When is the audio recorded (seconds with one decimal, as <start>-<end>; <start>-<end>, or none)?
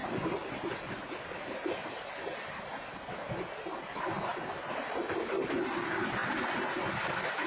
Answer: 2.4-6.2; 7.0-7.5